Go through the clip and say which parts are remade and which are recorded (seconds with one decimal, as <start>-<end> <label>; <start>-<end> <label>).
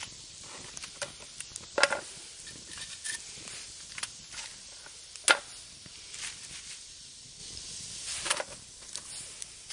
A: 0.0-9.7 recorded